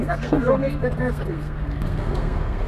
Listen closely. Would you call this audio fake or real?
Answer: fake